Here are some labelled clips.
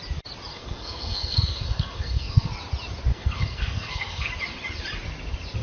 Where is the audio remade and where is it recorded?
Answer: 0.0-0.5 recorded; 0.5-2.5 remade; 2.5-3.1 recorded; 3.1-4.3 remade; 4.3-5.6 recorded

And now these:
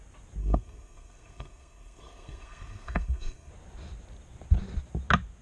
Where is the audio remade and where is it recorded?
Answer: 0.0-0.4 recorded; 0.4-3.5 remade; 3.5-5.4 recorded